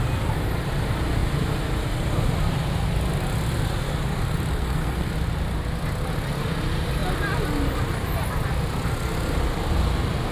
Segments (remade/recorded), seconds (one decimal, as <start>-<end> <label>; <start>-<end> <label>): 0.0-4.5 recorded; 4.5-5.1 remade; 5.1-10.3 recorded